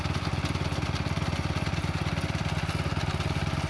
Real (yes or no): yes